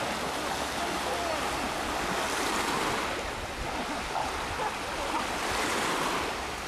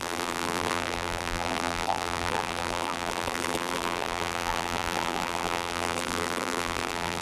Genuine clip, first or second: first